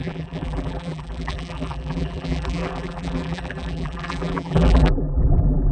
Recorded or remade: remade